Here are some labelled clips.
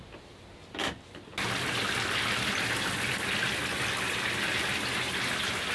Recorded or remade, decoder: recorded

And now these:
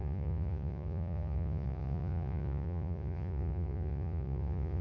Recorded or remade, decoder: remade, vocoder, Vocos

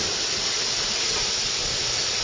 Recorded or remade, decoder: recorded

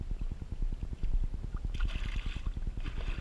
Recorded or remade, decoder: recorded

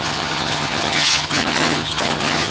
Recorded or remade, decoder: remade, vocoder, HiFi-GAN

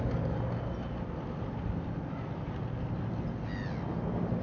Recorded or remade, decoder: recorded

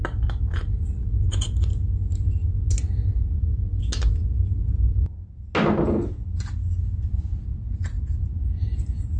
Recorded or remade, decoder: recorded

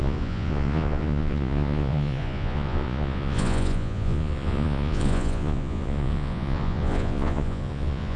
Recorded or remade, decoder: remade, vocoder, Vocos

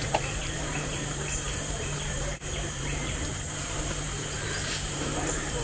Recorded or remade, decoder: remade, vocoder, BigVGAN v2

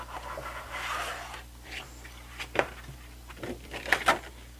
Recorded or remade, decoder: recorded